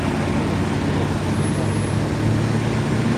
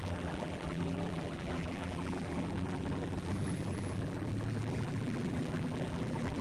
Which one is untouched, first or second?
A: first